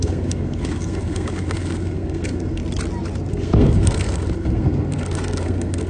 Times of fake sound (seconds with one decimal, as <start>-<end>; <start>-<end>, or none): 0.0-2.6; 3.3-5.9